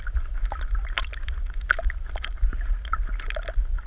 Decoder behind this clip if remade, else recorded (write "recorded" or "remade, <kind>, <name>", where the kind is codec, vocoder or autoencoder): recorded